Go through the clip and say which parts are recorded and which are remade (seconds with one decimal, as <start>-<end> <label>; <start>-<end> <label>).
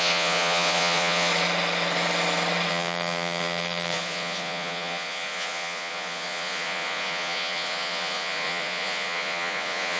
0.0-1.3 remade; 1.3-2.7 recorded; 2.7-10.0 remade